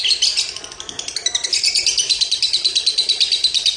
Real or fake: real